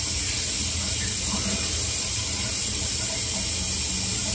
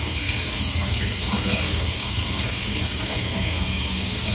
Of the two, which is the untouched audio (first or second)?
first